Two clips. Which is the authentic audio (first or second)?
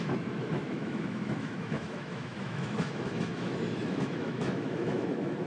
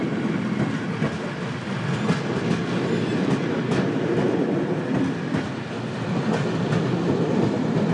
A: second